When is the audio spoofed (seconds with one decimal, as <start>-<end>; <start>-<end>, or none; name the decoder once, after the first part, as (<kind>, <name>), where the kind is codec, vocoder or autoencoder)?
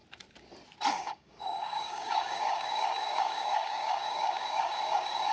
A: 0.9-5.3 (codec, DAC)